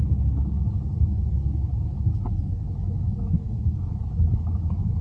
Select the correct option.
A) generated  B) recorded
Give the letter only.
A